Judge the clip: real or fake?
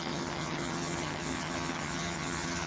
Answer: fake